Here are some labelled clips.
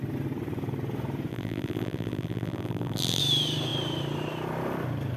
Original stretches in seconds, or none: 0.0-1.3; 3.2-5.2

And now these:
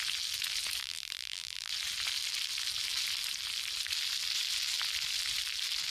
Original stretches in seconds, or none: 0.0-0.8; 1.7-5.9

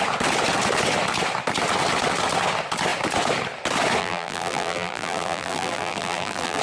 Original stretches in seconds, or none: 0.0-4.0